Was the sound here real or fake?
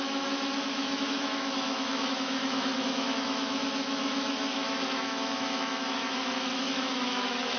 fake